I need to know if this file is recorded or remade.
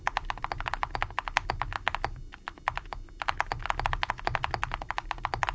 recorded